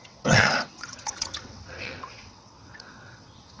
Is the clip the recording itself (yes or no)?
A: no